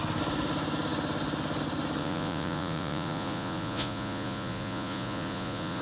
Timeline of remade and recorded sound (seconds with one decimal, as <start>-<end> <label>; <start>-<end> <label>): 0.0-2.0 recorded; 2.0-5.8 remade